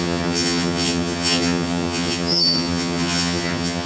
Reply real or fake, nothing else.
fake